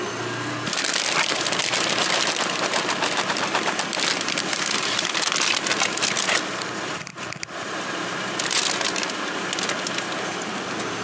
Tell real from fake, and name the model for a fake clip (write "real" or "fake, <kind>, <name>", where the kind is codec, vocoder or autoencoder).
real